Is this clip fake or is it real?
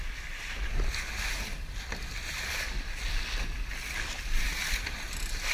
real